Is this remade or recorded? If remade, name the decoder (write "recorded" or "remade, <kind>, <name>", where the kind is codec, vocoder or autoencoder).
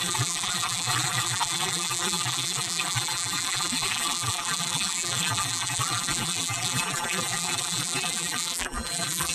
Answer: remade, vocoder, BigVGAN v2